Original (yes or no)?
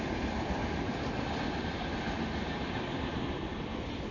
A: yes